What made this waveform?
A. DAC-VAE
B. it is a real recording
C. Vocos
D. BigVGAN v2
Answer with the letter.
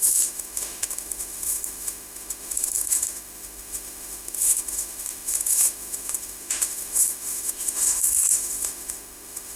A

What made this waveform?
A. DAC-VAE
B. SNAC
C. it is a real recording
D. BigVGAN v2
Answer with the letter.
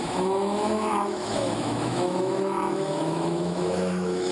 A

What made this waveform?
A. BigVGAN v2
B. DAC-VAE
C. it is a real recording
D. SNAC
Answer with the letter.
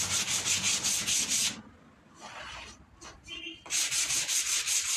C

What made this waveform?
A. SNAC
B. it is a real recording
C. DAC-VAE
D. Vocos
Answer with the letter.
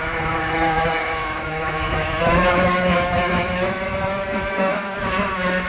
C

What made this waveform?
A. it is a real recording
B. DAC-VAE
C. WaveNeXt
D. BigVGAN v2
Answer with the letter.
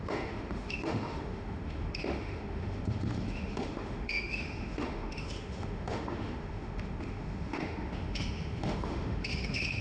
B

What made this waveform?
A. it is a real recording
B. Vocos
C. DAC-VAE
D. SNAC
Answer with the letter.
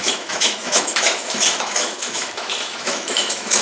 C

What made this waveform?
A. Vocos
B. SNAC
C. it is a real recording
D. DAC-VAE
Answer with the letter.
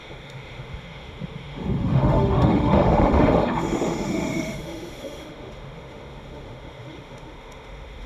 D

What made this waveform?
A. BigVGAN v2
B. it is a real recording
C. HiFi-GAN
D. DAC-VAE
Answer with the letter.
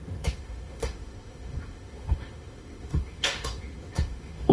D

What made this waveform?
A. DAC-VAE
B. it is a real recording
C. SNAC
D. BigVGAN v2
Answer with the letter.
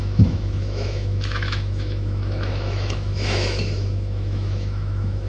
A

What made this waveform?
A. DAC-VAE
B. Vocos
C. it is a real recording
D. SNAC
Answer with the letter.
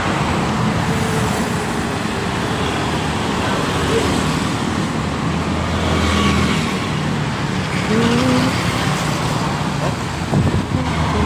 C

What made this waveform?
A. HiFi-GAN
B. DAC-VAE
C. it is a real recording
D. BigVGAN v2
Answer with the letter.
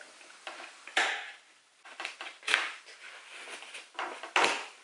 C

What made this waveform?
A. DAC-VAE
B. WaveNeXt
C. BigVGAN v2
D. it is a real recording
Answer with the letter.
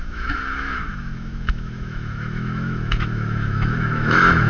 A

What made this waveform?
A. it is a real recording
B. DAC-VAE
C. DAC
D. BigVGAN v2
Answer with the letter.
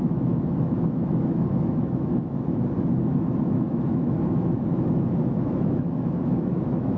B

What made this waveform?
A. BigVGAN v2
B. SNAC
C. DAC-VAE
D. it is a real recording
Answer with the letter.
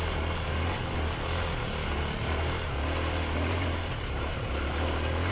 D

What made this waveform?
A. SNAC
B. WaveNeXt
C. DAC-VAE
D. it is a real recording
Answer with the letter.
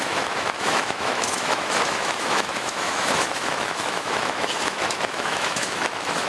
C